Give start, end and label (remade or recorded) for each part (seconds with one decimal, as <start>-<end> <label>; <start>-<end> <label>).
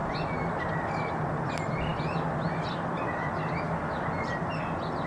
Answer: 0.0-5.1 recorded